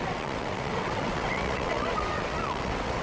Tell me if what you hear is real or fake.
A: fake